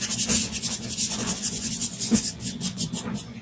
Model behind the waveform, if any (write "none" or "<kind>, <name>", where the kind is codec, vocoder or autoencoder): vocoder, Vocos